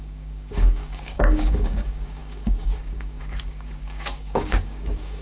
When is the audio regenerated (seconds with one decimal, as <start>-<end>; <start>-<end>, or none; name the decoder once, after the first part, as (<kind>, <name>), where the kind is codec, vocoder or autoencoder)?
0.0-5.2 (codec, DAC)